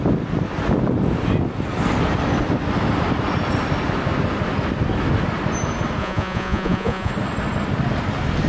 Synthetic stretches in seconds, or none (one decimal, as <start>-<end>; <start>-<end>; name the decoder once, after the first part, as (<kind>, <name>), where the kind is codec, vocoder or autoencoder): 6.0-7.1 (vocoder, Vocos)

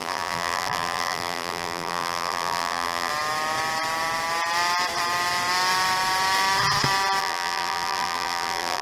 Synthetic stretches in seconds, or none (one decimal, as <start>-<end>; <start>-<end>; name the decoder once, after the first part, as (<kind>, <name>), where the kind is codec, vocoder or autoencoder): 0.0-3.1 (vocoder, BigVGAN v2); 7.2-8.8

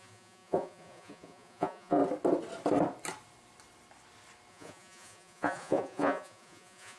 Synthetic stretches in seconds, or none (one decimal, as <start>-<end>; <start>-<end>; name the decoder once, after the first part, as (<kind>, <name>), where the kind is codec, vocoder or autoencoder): 0.0-2.0 (vocoder, Vocos); 4.5-7.0

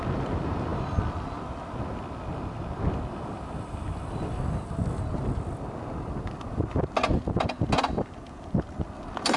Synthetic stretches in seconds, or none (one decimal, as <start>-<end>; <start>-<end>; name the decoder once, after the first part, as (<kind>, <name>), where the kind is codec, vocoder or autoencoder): none